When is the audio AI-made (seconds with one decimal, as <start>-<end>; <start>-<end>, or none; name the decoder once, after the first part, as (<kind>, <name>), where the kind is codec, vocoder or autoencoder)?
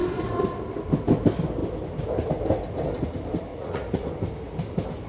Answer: 3.5-4.1 (vocoder, Vocos)